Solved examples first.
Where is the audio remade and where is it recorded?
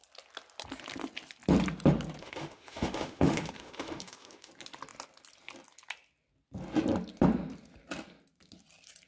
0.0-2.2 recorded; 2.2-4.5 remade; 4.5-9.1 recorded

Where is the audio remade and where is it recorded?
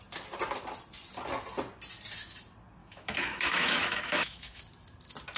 0.0-2.8 recorded; 2.8-4.6 remade; 4.6-5.4 recorded